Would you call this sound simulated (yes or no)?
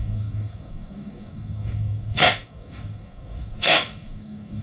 yes